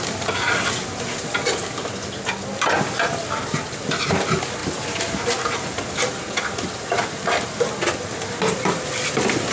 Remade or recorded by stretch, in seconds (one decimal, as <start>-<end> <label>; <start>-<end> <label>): 0.0-9.5 recorded